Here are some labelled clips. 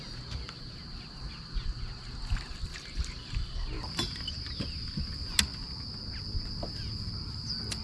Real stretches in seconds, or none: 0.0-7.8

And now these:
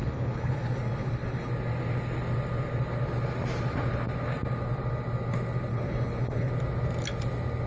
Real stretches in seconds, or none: 1.5-5.7; 6.5-7.7

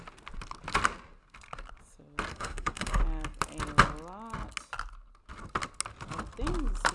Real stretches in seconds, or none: 0.0-2.3; 3.0-6.9

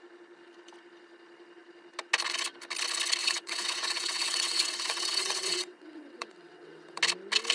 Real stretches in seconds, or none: 0.0-3.2; 7.0-7.5

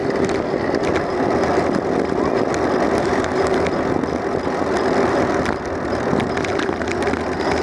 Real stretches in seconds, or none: 0.0-7.6

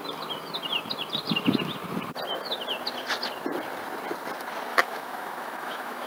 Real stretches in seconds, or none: 0.0-4.7